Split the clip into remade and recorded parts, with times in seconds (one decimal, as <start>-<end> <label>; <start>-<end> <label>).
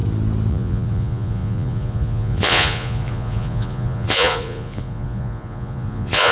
0.0-0.5 recorded; 0.5-6.3 remade